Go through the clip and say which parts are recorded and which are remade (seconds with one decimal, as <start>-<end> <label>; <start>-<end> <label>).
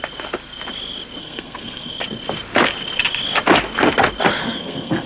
0.0-1.2 recorded; 1.2-1.9 remade; 1.9-4.4 recorded; 4.4-5.1 remade